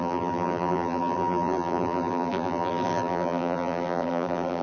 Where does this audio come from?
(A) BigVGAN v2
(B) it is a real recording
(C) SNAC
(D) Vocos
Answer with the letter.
A